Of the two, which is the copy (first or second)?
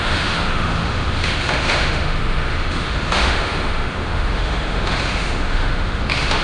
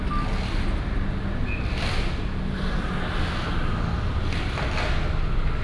first